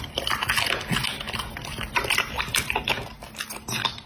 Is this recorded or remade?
recorded